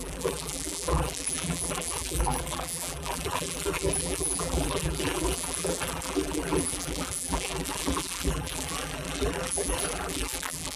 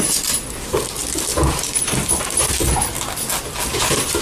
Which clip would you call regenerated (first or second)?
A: first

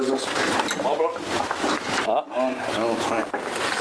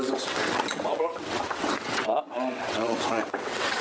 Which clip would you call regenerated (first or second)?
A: second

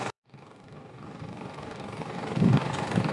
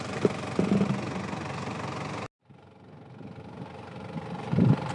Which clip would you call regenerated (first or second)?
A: first